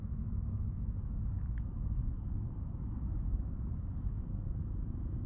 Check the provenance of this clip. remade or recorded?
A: remade